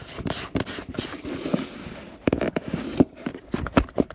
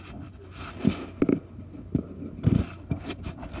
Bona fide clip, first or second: second